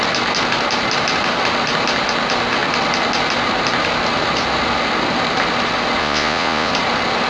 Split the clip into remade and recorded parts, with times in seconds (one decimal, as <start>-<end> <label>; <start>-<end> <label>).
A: 0.0-6.0 recorded; 6.0-6.7 remade; 6.7-7.3 recorded